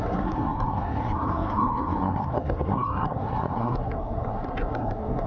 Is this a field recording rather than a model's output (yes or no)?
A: no